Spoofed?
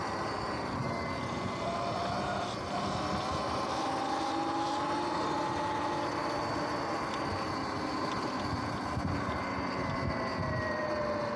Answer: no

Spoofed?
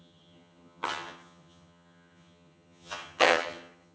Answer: yes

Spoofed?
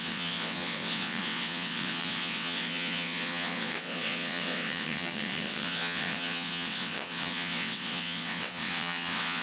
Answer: yes